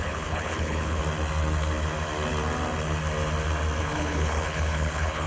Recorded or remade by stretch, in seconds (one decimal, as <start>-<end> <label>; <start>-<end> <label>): 0.0-1.0 remade; 1.0-3.8 recorded; 3.8-5.3 remade